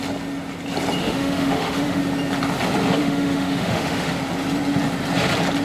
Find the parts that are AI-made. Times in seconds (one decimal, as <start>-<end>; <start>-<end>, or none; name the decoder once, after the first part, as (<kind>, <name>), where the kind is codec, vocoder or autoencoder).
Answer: 1.0-2.0 (autoencoder, DAC-VAE); 3.0-4.1

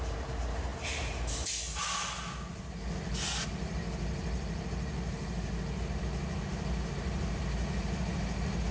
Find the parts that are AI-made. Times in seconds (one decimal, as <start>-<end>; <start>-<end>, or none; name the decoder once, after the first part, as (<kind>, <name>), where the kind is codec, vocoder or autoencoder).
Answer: none